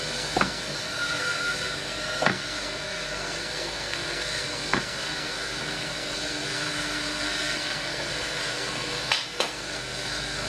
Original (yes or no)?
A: no